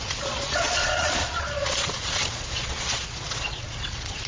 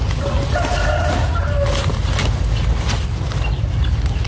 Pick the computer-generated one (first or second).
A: first